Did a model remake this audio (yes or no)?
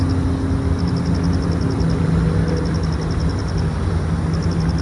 no